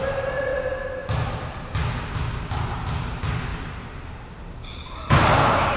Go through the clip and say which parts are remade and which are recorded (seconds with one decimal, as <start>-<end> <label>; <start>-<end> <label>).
0.0-0.5 remade; 0.5-1.3 recorded; 1.3-1.8 remade; 1.8-2.7 recorded; 2.7-3.5 remade; 3.5-4.1 recorded; 4.1-5.8 remade

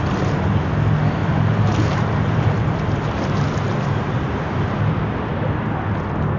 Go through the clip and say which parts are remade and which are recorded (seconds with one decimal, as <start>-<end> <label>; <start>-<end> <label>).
0.0-1.2 recorded; 1.2-5.0 remade; 5.0-6.4 recorded